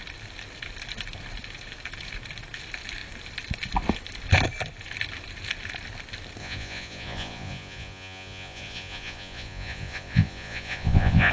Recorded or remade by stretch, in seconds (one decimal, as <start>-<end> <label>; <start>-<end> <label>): 0.0-6.4 recorded; 6.4-11.3 remade

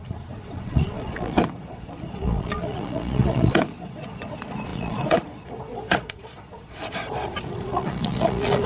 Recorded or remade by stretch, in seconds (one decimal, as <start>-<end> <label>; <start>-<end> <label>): 0.0-8.7 remade

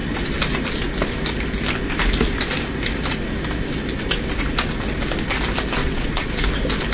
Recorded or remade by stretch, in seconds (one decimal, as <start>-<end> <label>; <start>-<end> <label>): 0.0-5.8 recorded; 5.8-6.3 remade; 6.3-6.9 recorded

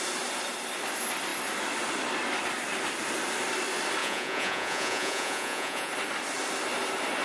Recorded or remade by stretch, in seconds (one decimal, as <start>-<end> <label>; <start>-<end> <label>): 0.0-4.0 recorded; 4.0-5.9 remade; 5.9-7.2 recorded

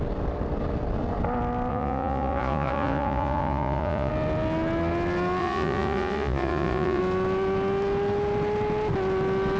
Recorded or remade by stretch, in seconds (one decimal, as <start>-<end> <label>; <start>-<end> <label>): 0.0-1.7 recorded; 1.7-4.1 remade; 4.1-5.4 recorded; 5.4-7.0 remade; 7.0-9.6 recorded

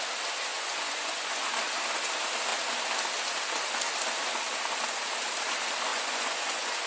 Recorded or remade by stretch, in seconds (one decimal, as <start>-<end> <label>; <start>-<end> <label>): 0.0-0.5 recorded; 0.5-1.4 remade; 1.4-5.9 recorded; 5.9-6.9 remade

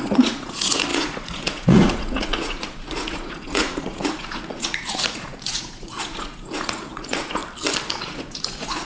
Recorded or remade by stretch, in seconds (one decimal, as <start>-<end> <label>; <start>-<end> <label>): 0.0-7.4 remade; 7.4-8.0 recorded; 8.0-8.9 remade

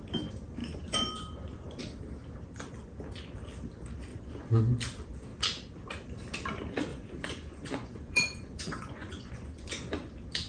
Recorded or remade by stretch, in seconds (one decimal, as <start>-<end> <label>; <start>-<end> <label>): 0.0-0.6 recorded; 0.6-1.8 remade; 1.8-4.1 recorded; 4.1-4.6 remade; 4.6-6.9 recorded; 6.9-10.1 remade; 10.1-10.5 recorded